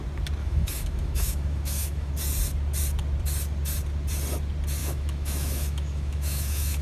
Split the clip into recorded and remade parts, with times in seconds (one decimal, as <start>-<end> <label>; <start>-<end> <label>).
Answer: 0.0-0.4 recorded; 0.4-2.1 remade; 2.1-4.8 recorded; 4.8-6.8 remade